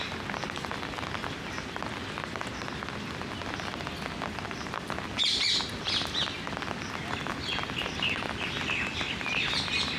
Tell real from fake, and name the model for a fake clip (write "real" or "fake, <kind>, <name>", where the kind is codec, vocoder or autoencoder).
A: real